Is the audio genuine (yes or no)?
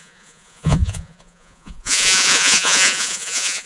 no